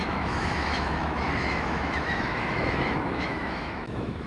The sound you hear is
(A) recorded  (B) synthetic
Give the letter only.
B